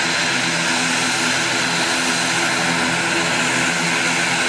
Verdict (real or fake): real